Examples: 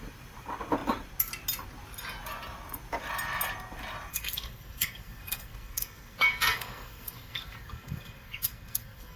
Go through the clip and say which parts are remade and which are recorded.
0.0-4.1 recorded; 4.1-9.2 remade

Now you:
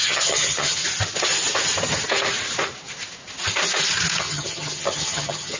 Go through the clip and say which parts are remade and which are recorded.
0.0-0.8 remade; 0.8-4.2 recorded; 4.2-5.6 remade

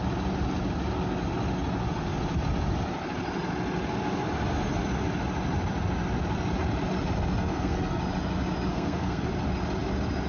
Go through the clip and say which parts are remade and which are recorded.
0.0-7.4 recorded; 7.4-8.0 remade; 8.0-8.7 recorded; 8.7-9.3 remade; 9.3-10.3 recorded

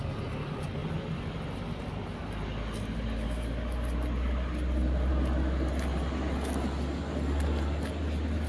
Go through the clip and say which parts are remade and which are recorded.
0.0-0.8 remade; 0.8-5.1 recorded; 5.1-5.9 remade; 5.9-8.0 recorded; 8.0-8.5 remade

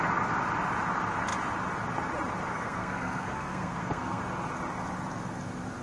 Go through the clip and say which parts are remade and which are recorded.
0.0-2.5 recorded; 2.5-4.2 remade; 4.2-5.8 recorded

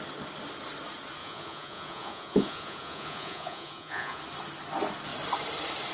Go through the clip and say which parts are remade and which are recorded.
0.0-1.2 recorded; 1.2-4.2 remade; 4.2-5.9 recorded

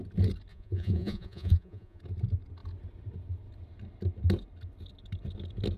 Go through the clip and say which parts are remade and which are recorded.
0.0-0.5 recorded; 0.5-2.0 remade; 2.0-5.8 recorded